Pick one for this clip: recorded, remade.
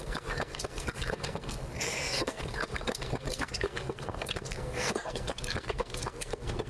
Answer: remade